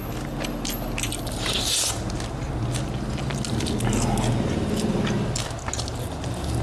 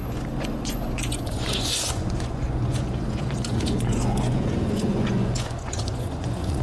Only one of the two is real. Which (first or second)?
first